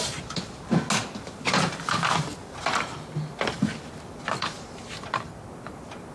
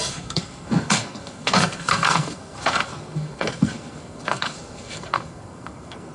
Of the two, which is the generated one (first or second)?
second